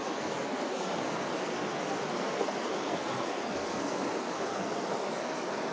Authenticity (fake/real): fake